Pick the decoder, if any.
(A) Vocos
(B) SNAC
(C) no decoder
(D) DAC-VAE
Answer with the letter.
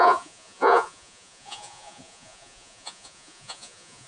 A